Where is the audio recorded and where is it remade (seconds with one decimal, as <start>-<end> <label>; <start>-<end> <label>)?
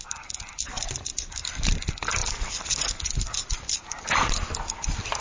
0.0-5.2 recorded